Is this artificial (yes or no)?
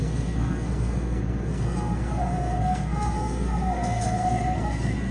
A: yes